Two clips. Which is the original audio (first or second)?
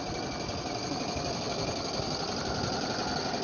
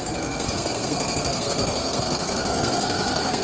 first